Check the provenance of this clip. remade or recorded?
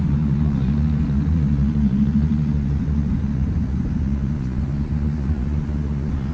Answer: remade